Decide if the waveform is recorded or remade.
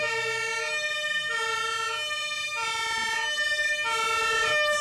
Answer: recorded